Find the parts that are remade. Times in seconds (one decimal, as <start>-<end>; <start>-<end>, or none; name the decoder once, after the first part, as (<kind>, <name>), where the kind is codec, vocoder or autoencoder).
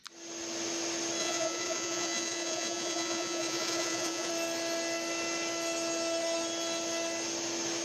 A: 1.2-4.3 (vocoder, Vocos)